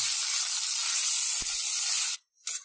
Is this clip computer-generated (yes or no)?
no